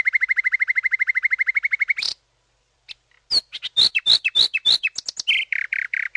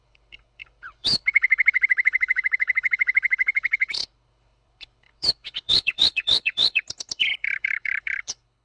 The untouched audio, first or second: first